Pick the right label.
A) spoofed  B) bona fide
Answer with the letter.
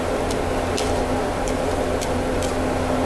B